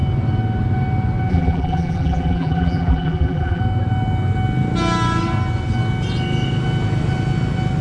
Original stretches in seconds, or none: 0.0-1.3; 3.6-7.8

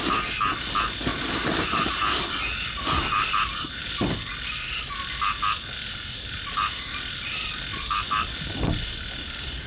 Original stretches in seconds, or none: 0.0-9.7

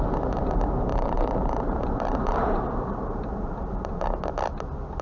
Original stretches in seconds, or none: 0.0-0.9; 3.9-5.0

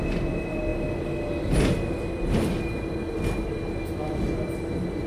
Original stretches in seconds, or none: 0.0-5.1

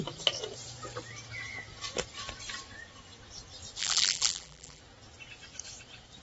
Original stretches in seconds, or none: 0.0-3.8; 4.8-6.2

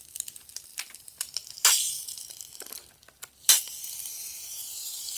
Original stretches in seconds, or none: 0.0-4.6

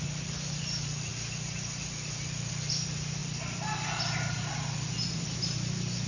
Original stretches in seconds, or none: 0.0-1.1; 2.5-6.1

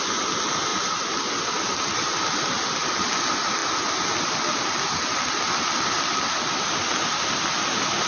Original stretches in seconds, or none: 0.0-8.1